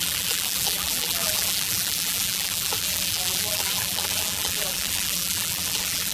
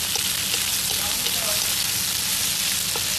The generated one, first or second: first